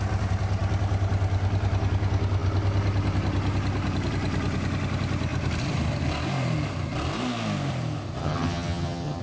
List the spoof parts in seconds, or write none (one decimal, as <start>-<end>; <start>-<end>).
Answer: 8.2-9.2